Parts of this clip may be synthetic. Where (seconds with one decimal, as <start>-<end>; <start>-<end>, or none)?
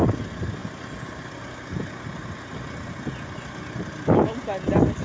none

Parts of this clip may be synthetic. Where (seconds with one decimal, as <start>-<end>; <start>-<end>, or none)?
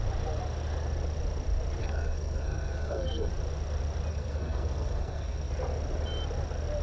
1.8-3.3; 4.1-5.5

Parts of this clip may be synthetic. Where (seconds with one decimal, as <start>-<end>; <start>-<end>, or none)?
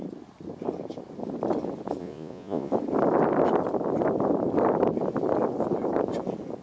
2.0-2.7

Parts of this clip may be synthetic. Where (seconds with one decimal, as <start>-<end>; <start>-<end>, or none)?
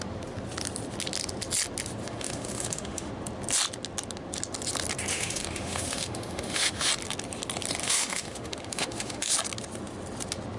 2.0-3.1; 5.1-6.9; 7.8-9.3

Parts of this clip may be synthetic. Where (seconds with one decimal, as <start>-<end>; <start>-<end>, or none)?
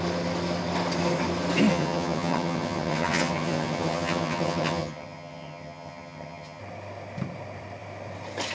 1.7-6.6